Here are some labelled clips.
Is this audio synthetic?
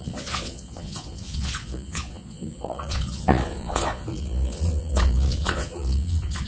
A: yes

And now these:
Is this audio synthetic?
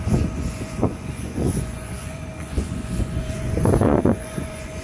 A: yes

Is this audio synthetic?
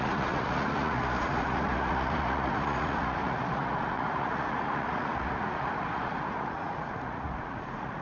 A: yes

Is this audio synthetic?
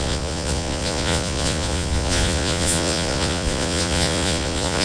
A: yes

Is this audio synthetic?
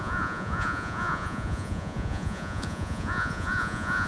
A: yes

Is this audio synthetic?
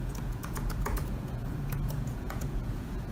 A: yes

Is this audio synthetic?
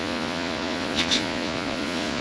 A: yes